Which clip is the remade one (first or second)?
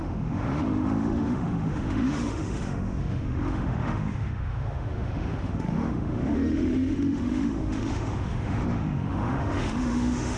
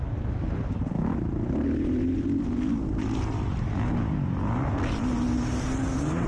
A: first